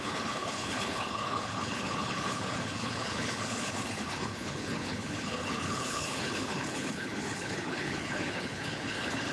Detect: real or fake fake